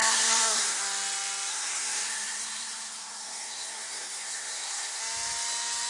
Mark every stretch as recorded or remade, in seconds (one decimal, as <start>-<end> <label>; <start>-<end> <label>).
0.0-0.8 remade; 0.8-1.5 recorded; 1.5-5.0 remade; 5.0-5.9 recorded